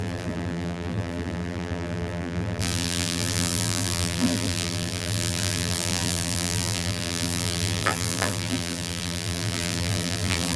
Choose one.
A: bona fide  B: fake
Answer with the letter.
B